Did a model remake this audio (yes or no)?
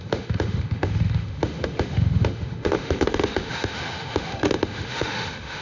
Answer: yes